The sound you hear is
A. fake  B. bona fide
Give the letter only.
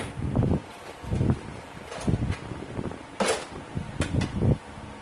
B